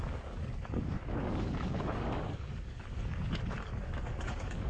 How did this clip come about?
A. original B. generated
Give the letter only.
B